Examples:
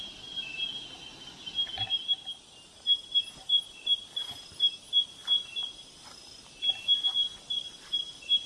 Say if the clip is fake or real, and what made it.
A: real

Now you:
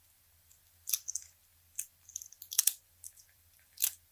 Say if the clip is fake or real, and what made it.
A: fake, vocoder, BigVGAN v2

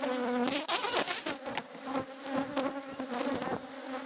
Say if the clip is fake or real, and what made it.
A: real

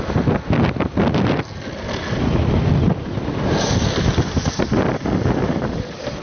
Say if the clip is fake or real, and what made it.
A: real